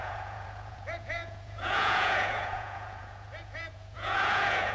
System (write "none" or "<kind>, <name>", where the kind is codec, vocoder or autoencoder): vocoder, Vocos